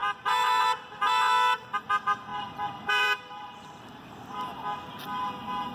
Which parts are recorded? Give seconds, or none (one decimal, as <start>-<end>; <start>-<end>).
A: 0.6-2.3; 4.2-5.7